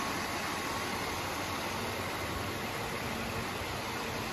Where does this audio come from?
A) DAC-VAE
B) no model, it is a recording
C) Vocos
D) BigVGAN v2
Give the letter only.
D